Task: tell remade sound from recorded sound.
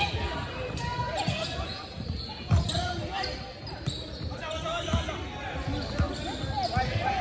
recorded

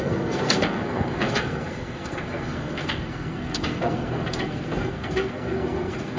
remade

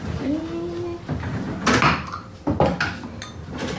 recorded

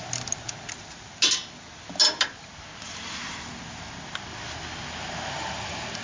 recorded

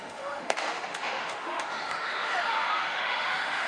remade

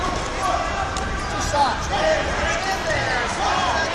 remade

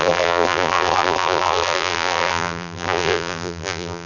remade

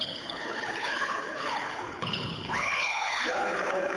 remade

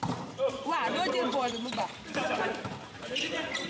remade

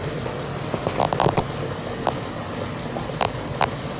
recorded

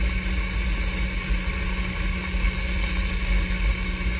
recorded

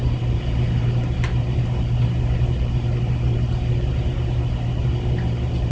recorded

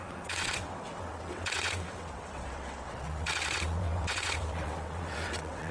remade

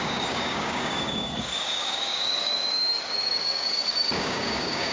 remade